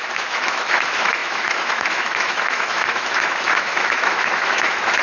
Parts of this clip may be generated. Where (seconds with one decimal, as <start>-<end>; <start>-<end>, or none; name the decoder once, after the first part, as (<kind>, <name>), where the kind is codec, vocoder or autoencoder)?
0.0-5.0 (autoencoder, DAC-VAE)